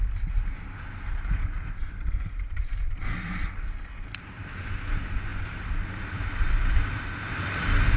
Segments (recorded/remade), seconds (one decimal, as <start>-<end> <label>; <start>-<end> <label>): 0.0-8.0 recorded